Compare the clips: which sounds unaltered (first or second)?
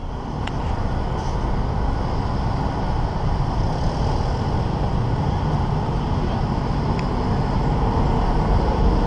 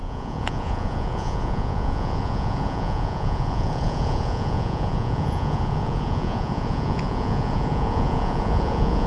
first